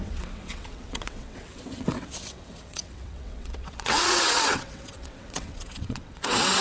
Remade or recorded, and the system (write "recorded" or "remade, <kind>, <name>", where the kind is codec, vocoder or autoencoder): remade, vocoder, WaveNeXt